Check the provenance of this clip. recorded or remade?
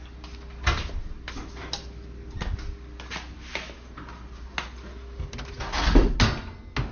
recorded